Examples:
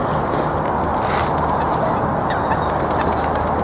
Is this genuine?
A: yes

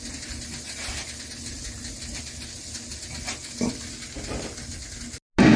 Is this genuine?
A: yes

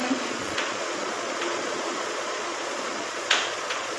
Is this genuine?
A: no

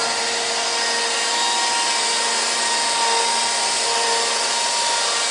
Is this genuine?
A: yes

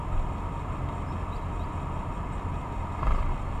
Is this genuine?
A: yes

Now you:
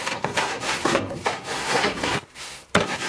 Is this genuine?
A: no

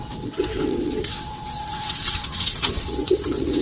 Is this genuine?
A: no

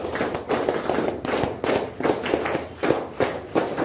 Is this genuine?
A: yes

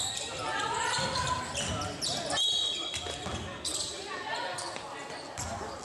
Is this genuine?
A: yes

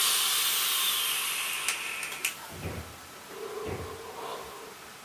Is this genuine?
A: yes